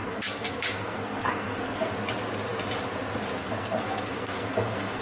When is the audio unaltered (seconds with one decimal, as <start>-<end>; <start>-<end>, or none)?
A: 1.9-3.4